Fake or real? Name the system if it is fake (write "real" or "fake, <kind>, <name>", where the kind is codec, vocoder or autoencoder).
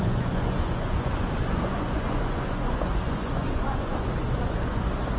fake, vocoder, Vocos